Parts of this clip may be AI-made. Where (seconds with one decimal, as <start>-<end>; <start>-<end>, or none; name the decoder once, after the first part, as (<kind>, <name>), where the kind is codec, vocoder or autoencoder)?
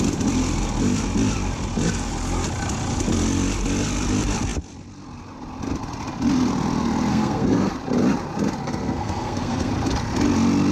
7.1-7.7 (codec, SNAC); 8.6-9.7